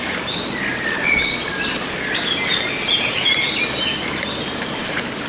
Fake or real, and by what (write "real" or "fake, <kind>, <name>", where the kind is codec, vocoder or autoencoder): real